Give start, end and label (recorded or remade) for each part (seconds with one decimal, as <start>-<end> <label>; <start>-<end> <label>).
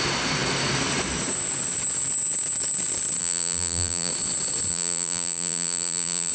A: 0.0-3.2 recorded; 3.2-4.1 remade; 4.1-4.7 recorded; 4.7-6.3 remade